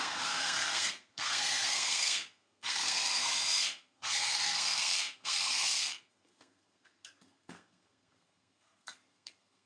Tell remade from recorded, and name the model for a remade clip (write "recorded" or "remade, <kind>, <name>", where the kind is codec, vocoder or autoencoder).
remade, codec, SNAC